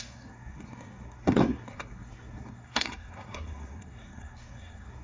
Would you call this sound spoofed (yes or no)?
yes